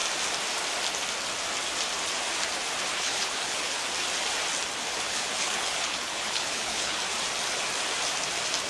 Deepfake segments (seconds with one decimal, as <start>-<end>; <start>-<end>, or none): 2.9-3.8; 5.1-7.0